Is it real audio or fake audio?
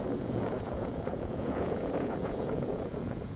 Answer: fake